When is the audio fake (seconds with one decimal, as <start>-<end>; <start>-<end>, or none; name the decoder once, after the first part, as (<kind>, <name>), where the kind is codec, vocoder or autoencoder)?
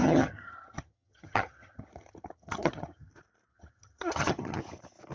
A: 0.0-3.1 (vocoder, HiFi-GAN); 3.5-4.6